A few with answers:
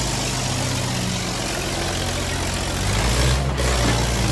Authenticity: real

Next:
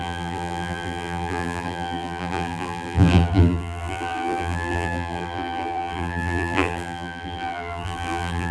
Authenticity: fake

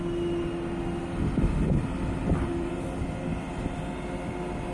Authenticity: real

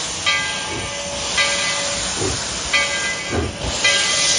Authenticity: real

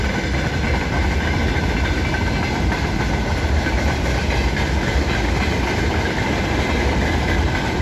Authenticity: real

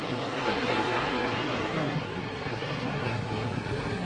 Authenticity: fake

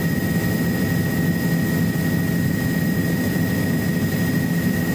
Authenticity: real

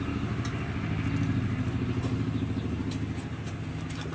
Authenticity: real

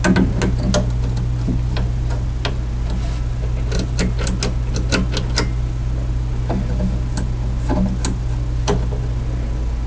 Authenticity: real